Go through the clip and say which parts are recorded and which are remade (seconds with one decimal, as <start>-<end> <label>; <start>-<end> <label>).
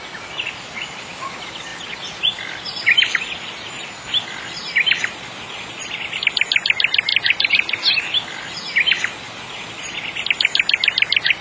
0.0-11.4 recorded